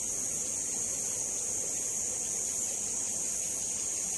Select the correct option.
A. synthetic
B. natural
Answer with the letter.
B